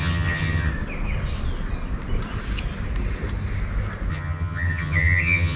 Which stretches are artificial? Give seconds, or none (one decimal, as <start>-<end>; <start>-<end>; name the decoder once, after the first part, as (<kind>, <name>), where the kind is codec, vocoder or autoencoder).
0.0-0.7 (vocoder, HiFi-GAN); 4.1-5.6